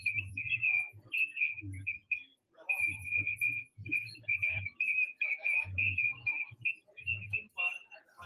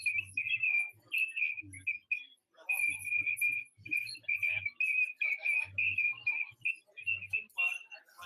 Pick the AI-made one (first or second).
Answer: first